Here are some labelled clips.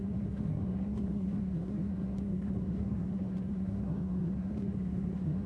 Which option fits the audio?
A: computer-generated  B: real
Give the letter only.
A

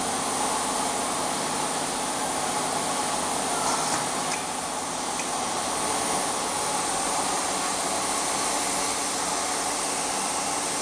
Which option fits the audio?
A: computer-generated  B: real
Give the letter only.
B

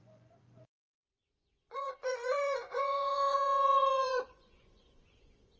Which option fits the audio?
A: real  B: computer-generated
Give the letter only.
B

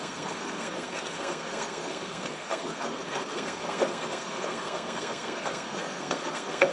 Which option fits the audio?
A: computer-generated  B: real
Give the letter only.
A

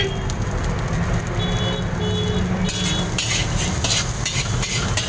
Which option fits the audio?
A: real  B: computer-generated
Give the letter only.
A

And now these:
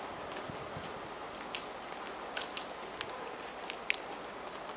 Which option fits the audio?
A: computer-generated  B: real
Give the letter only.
B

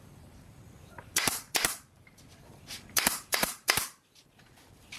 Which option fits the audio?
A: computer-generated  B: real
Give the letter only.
A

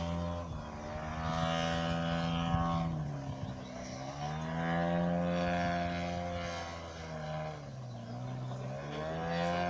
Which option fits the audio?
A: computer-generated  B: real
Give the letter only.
B